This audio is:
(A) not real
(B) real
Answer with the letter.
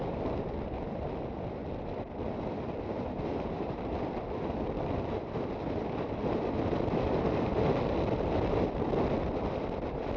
B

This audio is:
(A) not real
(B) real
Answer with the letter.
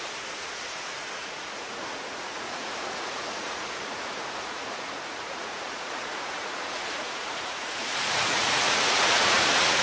A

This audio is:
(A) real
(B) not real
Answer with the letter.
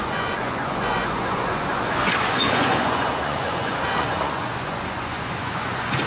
B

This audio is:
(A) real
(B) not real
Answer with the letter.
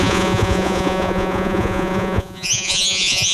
B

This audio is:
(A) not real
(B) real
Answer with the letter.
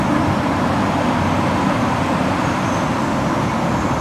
B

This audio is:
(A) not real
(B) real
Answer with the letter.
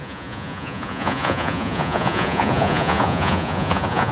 A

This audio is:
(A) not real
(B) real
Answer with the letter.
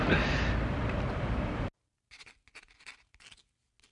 B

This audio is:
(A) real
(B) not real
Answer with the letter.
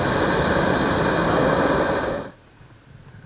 A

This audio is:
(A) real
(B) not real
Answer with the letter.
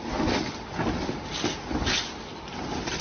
A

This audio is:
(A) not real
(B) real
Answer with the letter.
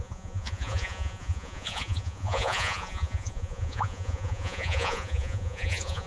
A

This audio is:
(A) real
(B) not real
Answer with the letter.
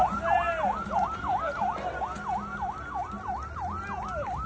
A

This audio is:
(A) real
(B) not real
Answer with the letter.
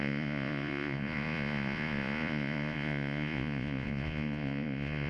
B